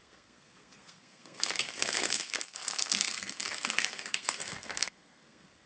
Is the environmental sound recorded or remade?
remade